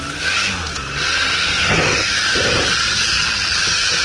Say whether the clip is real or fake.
real